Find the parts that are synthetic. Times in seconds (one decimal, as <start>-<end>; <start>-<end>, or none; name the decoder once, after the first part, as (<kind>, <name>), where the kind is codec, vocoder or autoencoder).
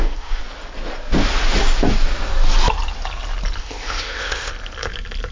0.0-0.4 (codec, ZipCodec); 3.6-4.5